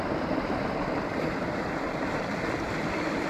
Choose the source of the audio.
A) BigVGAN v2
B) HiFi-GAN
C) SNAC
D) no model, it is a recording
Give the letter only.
D